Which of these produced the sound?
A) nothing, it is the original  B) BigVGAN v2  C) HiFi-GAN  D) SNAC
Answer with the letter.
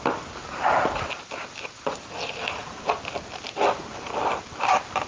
A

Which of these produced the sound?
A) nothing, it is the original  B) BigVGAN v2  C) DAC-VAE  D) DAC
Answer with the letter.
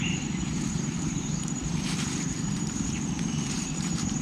B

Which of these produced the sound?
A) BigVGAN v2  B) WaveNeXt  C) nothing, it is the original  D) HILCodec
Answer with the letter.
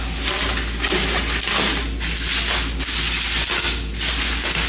C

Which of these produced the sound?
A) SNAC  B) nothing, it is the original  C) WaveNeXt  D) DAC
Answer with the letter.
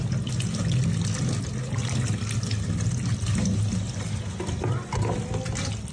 B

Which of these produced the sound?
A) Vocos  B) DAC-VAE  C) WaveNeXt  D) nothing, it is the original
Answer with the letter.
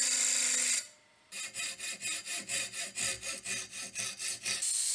D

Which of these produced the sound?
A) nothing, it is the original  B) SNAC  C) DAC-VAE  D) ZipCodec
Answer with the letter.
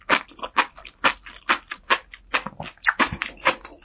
A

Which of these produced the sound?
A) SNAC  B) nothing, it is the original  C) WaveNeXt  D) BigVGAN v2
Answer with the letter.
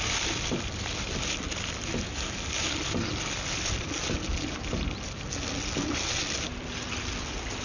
B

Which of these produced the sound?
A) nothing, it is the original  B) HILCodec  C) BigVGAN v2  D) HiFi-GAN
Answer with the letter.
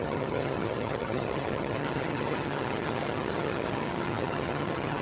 D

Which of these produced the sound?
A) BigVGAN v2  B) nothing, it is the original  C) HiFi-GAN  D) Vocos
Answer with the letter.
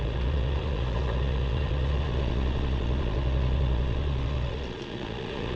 D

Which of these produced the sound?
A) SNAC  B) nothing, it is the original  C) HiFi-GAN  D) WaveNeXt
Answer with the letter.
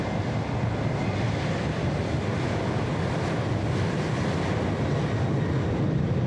B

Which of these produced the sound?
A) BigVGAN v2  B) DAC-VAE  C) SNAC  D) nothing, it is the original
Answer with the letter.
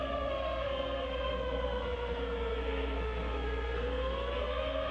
C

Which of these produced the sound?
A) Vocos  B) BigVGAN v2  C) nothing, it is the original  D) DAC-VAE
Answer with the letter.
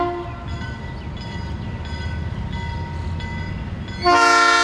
C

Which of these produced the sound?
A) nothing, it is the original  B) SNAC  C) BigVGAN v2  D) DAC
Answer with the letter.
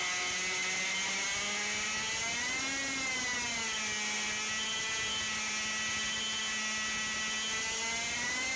A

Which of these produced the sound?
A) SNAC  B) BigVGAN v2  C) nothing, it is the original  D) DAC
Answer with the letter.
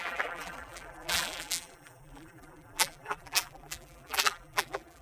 B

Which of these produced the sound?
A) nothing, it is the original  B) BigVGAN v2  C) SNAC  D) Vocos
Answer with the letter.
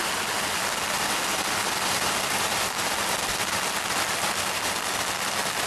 A